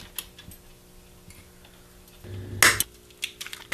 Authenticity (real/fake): real